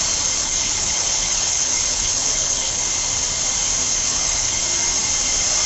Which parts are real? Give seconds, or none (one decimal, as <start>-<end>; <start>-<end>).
0.0-0.4; 2.8-3.9; 4.6-5.7